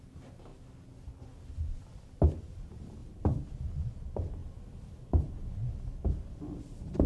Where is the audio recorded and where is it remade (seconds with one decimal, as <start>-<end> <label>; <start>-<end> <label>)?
0.0-0.5 remade; 0.5-2.4 recorded; 2.4-3.0 remade; 3.0-3.7 recorded; 3.7-4.4 remade; 4.4-6.4 recorded; 6.4-7.1 remade